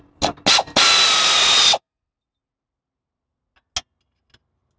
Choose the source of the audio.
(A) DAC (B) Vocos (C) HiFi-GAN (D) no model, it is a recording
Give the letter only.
D